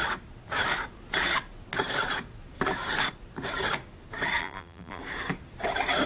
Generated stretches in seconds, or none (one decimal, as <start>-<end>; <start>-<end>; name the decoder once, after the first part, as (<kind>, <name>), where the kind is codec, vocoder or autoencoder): 4.4-5.0 (vocoder, BigVGAN v2)